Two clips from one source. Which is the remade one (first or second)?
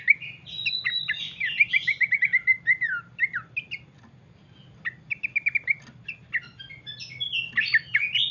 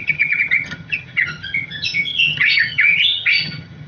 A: second